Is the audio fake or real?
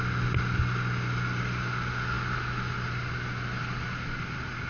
real